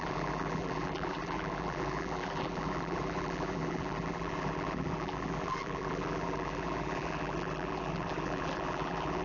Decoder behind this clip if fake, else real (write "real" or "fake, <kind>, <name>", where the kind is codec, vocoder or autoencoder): fake, vocoder, BigVGAN v2